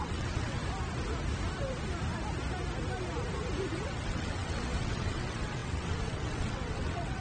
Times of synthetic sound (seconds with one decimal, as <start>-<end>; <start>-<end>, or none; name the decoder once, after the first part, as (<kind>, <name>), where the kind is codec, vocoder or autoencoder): 0.0-0.6 (vocoder, WaveNeXt); 3.7-7.2